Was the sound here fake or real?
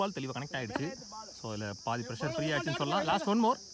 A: real